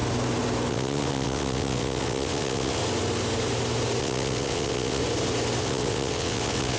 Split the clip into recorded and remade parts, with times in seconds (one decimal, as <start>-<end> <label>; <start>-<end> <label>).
0.0-0.7 recorded; 0.7-2.8 remade; 2.8-4.0 recorded; 4.0-5.0 remade; 5.0-5.6 recorded; 5.6-6.8 remade